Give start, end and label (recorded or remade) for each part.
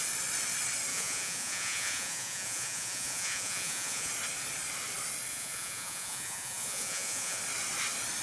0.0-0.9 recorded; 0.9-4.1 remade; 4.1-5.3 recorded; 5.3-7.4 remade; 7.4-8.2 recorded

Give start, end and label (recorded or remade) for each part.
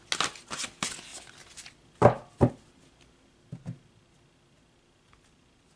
0.0-5.8 recorded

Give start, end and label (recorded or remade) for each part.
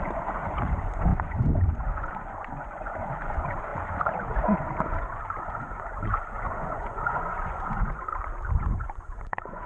0.0-8.1 remade; 8.1-8.6 recorded; 8.6-9.7 remade